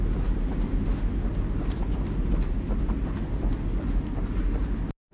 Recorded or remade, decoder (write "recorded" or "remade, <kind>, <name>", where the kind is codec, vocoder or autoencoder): recorded